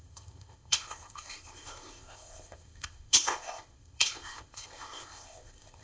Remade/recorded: remade